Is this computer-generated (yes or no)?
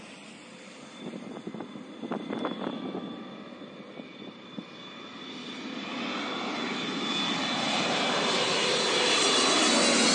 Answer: no